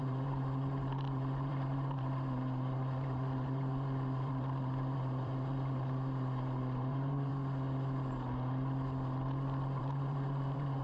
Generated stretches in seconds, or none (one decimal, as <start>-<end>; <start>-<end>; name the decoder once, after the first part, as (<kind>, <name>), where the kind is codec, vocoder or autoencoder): 0.0-7.3 (vocoder, BigVGAN v2); 9.8-10.8